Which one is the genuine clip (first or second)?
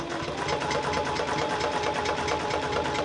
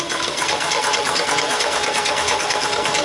first